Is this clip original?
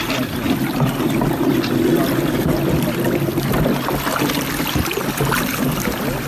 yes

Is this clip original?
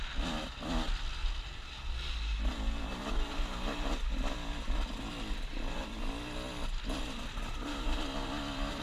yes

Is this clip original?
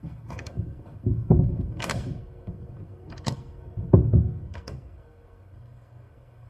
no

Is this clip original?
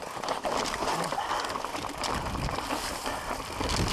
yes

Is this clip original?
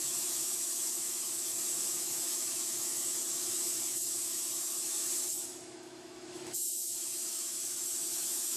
no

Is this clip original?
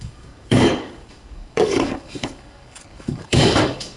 no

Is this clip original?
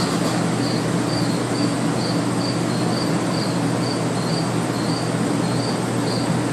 yes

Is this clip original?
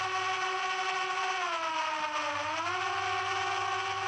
yes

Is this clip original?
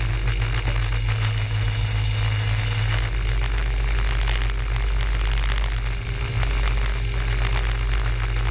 yes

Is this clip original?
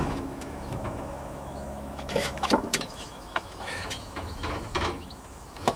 no